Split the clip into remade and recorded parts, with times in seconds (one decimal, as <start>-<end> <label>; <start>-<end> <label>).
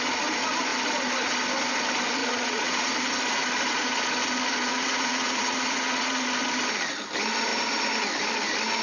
0.0-2.2 recorded; 2.2-2.9 remade; 2.9-4.7 recorded; 4.7-6.2 remade; 6.2-8.8 recorded